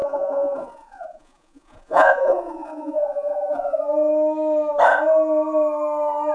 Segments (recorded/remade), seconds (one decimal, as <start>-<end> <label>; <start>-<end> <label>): 0.0-3.8 remade; 3.8-6.3 recorded